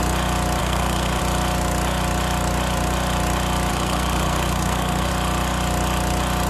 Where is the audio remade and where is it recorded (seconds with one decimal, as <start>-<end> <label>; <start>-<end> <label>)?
0.0-0.6 recorded; 0.6-1.2 remade; 1.2-3.7 recorded; 3.7-5.1 remade; 5.1-6.5 recorded